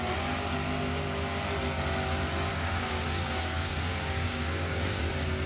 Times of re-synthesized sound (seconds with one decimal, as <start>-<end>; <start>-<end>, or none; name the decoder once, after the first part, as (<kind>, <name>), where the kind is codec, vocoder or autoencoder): 2.5-5.1 (codec, DAC)